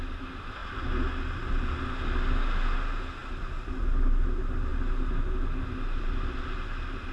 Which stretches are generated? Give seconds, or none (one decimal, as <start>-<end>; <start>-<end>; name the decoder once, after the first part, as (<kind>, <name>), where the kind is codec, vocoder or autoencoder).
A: none